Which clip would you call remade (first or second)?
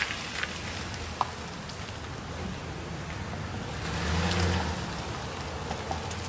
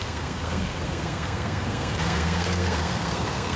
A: second